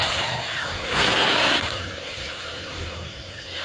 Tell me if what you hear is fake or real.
fake